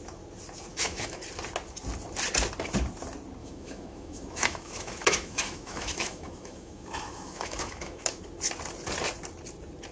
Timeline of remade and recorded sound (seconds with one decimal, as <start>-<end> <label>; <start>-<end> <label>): 0.0-0.7 recorded; 0.7-1.2 remade; 1.2-3.4 recorded; 3.4-8.2 remade; 8.2-9.9 recorded